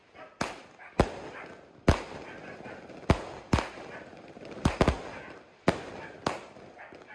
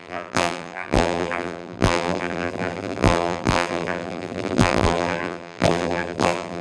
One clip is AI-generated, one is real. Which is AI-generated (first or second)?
second